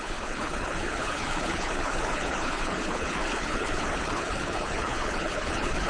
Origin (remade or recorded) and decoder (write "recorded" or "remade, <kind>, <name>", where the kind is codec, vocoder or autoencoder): remade, codec, HILCodec